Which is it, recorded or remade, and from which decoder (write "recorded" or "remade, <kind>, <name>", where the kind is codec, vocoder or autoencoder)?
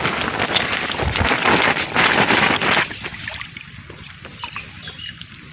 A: recorded